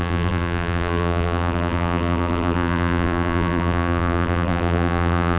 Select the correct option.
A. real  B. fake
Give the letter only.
B